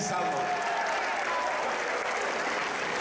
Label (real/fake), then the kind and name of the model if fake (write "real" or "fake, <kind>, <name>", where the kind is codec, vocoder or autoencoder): real